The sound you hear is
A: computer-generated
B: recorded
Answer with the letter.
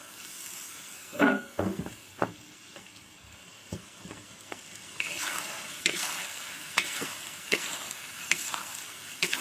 A